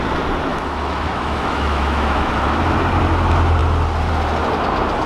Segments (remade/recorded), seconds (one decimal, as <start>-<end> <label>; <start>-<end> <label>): 0.0-0.5 recorded; 0.5-2.6 remade; 2.6-5.1 recorded